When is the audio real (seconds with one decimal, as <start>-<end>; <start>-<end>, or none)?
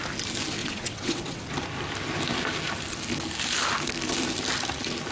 0.0-0.6; 1.4-5.1